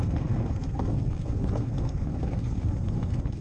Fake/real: fake